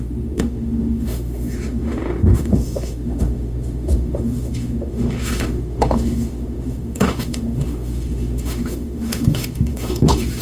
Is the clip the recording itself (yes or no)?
no